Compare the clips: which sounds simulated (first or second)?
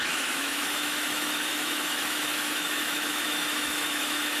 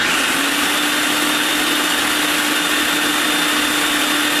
first